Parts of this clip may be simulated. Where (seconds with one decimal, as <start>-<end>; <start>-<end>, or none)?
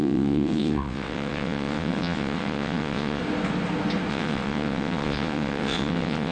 0.0-3.2; 4.1-6.3